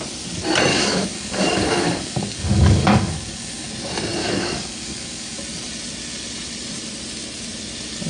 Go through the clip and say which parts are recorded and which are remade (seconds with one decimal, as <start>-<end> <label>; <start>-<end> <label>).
0.0-0.7 recorded; 0.7-3.7 remade; 3.7-4.2 recorded; 4.2-5.4 remade; 5.4-8.1 recorded